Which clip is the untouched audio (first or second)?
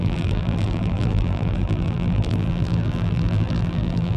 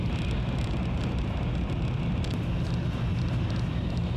second